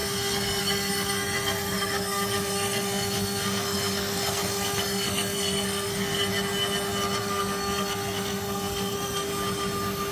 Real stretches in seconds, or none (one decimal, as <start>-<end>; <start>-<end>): 6.3-7.2; 9.3-10.1